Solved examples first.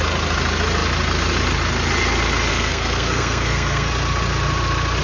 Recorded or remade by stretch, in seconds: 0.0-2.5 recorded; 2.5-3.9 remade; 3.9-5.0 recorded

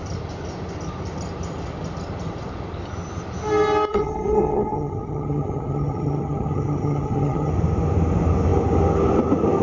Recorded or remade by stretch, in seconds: 0.0-3.9 recorded; 3.9-7.5 remade; 7.5-9.6 recorded

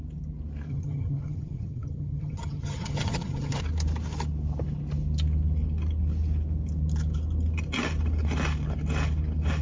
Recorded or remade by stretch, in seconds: 0.0-0.7 recorded; 0.7-3.6 remade; 3.6-9.6 recorded

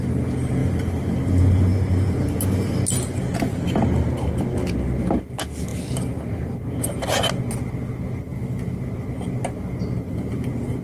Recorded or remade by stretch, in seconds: 0.0-10.8 recorded

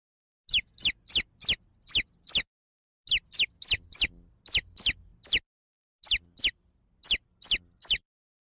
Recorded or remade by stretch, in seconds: 0.0-8.4 recorded